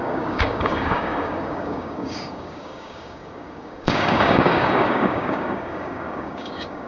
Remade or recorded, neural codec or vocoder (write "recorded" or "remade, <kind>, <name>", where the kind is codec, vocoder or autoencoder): remade, codec, DAC